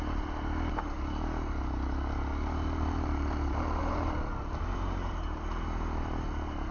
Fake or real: real